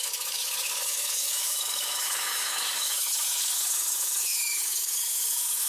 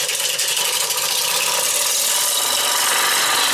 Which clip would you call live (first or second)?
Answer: second